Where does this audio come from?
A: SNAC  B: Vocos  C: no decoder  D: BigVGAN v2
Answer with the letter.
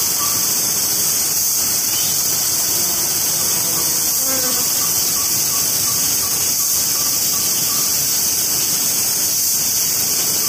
C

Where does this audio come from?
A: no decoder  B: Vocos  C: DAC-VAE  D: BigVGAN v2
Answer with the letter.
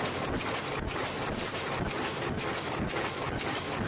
A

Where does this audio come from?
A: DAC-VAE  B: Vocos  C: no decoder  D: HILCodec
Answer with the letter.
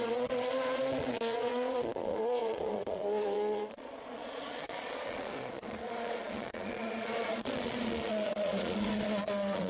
B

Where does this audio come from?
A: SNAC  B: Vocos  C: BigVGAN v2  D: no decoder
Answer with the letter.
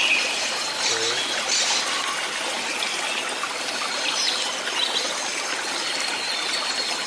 D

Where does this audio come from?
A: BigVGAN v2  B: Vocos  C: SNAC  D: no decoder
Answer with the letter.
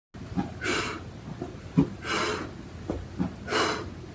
D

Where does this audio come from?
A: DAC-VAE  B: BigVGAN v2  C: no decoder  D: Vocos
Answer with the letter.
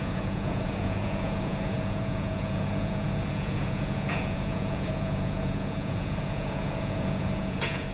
D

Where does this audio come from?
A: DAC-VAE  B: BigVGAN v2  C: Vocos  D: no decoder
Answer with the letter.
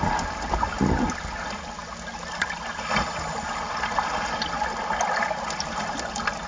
D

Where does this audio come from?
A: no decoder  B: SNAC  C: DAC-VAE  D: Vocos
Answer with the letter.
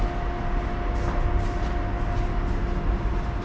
A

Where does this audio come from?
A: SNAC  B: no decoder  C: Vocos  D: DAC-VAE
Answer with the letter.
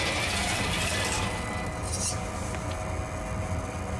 B